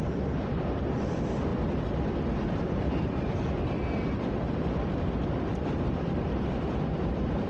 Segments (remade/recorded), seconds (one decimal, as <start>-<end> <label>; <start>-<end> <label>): 0.0-7.5 remade